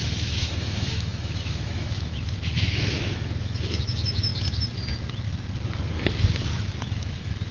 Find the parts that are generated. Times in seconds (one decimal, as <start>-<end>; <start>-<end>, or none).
0.0-4.3; 6.8-7.5